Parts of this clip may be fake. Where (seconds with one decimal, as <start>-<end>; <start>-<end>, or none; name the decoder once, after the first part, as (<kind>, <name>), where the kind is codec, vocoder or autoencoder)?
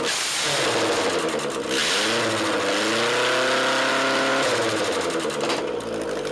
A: 4.3-5.6 (vocoder, BigVGAN v2)